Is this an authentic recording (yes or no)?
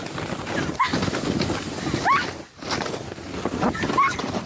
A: yes